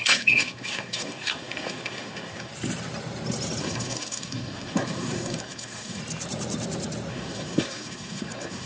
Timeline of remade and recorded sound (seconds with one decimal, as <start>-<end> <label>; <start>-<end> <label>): 0.0-2.5 remade; 2.5-3.6 recorded; 3.6-6.0 remade; 6.0-7.1 recorded; 7.1-8.7 remade